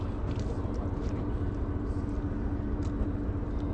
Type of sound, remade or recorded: recorded